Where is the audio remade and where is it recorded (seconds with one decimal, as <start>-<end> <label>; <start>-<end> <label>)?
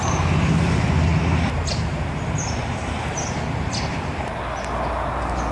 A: 0.0-1.1 recorded; 1.1-4.4 remade; 4.4-5.5 recorded